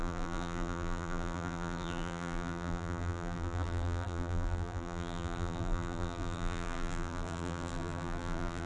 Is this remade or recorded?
remade